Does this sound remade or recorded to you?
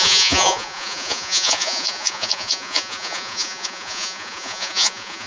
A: remade